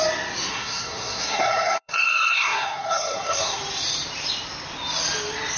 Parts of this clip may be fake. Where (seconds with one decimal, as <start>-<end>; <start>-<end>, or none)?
0.5-3.6